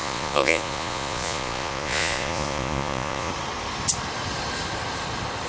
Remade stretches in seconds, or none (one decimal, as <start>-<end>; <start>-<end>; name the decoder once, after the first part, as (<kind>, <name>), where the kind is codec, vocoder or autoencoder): 0.0-3.3 (vocoder, Vocos)